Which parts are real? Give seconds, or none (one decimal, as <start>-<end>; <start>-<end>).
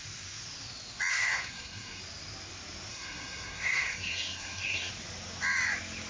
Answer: 0.0-1.1; 2.0-2.9; 4.9-6.1